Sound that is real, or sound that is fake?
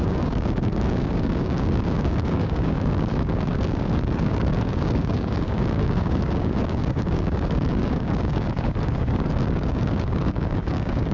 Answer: fake